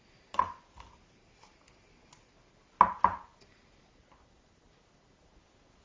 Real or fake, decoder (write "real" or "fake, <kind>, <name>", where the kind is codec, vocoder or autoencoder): real